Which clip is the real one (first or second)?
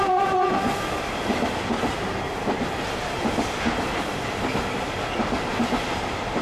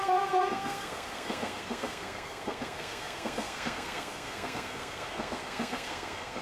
first